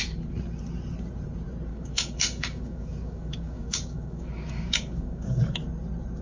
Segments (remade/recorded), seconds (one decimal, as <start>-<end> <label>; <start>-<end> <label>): 0.0-1.7 recorded; 1.7-5.4 remade; 5.4-6.2 recorded